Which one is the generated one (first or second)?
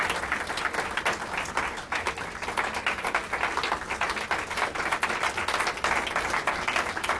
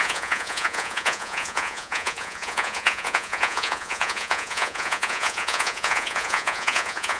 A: second